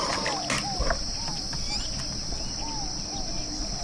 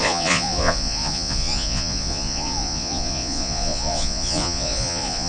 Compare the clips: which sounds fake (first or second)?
second